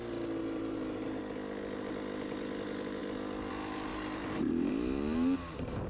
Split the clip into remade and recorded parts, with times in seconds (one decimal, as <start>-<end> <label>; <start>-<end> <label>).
0.0-0.4 recorded; 0.4-1.2 remade; 1.2-3.9 recorded; 3.9-4.7 remade; 4.7-5.9 recorded